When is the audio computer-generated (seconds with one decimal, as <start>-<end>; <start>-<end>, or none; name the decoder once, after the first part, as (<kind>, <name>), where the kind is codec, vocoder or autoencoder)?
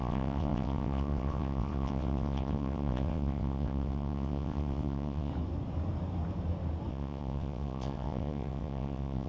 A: 0.0-5.3 (vocoder, WaveNeXt); 6.9-9.3